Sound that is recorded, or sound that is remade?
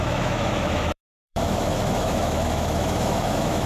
remade